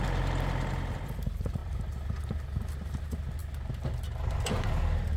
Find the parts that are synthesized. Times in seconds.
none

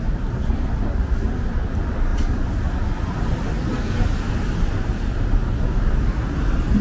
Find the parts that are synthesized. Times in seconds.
none

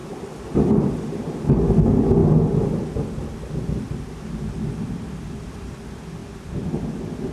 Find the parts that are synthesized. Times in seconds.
0.0-0.9 (vocoder, BigVGAN v2); 6.2-6.8

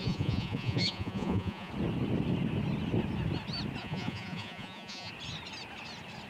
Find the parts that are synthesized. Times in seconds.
0.0-1.7 (vocoder, Vocos); 3.8-5.1